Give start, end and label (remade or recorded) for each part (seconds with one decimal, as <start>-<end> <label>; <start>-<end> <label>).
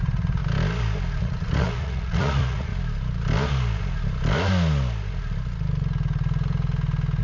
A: 0.0-0.4 remade; 0.4-1.2 recorded; 1.2-2.7 remade; 2.7-7.2 recorded